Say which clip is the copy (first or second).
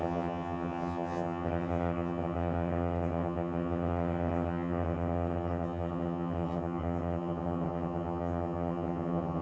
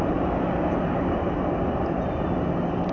first